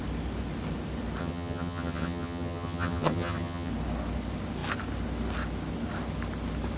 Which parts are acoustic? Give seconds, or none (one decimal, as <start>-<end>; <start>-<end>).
0.0-1.2; 3.7-6.8